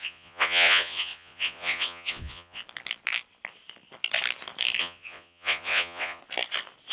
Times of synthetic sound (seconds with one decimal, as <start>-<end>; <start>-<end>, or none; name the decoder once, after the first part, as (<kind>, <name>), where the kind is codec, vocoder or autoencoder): 0.0-2.6 (vocoder, Vocos); 4.8-6.2